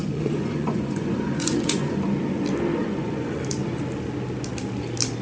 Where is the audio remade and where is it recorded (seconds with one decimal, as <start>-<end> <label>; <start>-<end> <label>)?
0.0-2.0 remade; 2.0-2.8 recorded; 2.8-3.4 remade; 3.4-5.2 recorded